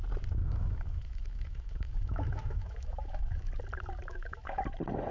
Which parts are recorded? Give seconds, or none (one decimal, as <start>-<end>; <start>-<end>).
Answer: 0.0-0.4; 3.5-4.1; 4.6-5.1